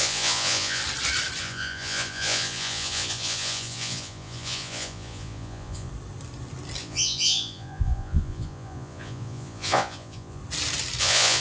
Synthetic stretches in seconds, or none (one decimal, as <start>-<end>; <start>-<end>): 0.0-0.8; 1.4-5.9; 6.8-10.4; 11.0-11.4